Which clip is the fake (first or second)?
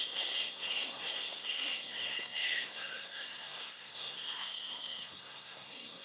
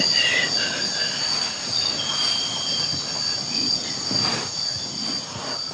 first